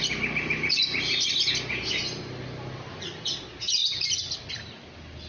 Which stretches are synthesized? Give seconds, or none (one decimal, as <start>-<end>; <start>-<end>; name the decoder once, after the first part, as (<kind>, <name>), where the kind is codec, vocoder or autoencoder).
none

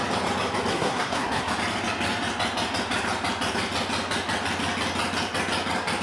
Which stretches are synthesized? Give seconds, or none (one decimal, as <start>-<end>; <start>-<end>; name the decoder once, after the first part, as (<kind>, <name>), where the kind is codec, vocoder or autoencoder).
0.7-1.5 (codec, SNAC)

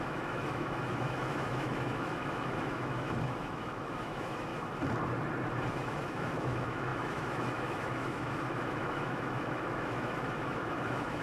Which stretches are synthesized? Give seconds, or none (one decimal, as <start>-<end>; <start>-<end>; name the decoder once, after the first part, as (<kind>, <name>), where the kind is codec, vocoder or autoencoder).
0.0-4.5 (autoencoder, DAC-VAE); 5.7-11.2